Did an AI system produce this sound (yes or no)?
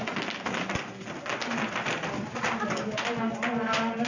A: no